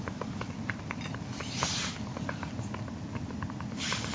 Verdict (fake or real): real